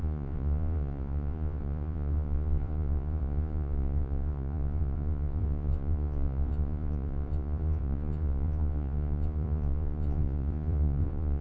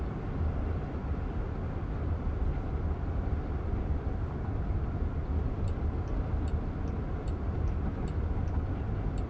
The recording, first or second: second